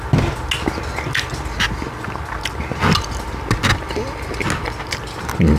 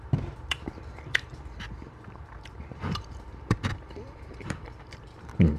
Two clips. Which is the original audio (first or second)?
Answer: first